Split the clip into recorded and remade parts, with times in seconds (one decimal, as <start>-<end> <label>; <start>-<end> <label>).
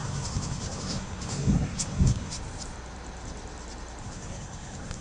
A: 0.0-2.4 remade; 2.4-4.0 recorded; 4.0-5.0 remade